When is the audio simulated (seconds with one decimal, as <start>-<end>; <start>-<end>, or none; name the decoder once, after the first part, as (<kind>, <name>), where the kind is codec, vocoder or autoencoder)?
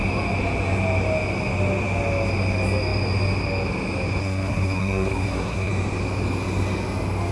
4.2-5.7 (codec, SNAC)